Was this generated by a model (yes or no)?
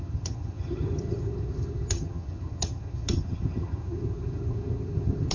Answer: yes